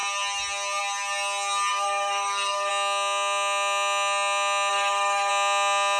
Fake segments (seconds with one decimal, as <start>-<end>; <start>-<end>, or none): 1.7-2.7; 4.7-5.3